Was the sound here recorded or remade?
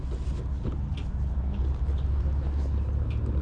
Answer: recorded